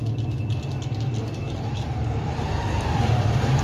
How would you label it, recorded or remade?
remade